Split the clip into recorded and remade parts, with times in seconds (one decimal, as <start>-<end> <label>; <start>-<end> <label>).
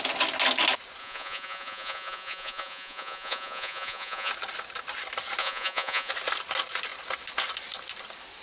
0.0-1.0 recorded; 1.0-4.3 remade; 4.3-5.4 recorded; 5.4-6.1 remade; 6.1-8.4 recorded